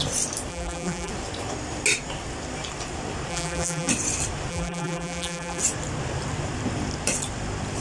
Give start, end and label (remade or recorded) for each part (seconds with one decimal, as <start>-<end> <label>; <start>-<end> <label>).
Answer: 0.0-0.5 recorded; 0.5-1.1 remade; 1.1-3.3 recorded; 3.3-3.9 remade; 3.9-4.5 recorded; 4.5-5.6 remade; 5.6-7.8 recorded